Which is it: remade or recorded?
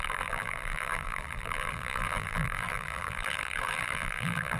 remade